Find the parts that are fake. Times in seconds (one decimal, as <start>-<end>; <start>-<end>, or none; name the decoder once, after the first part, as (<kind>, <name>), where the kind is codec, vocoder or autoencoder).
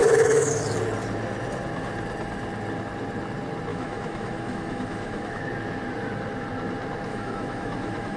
0.0-0.6 (autoencoder, DAC-VAE); 3.7-5.4; 7.1-8.2